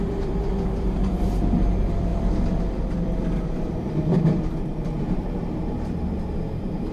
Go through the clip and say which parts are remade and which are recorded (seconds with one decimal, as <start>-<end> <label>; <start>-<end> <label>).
0.0-6.9 remade